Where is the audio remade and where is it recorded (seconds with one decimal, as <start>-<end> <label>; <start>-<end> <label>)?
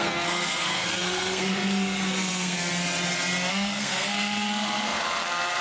0.0-2.7 remade; 2.7-3.5 recorded; 3.5-5.6 remade